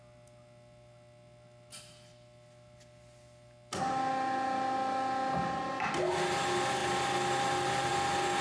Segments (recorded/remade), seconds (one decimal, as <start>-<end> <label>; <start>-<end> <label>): 0.0-8.4 recorded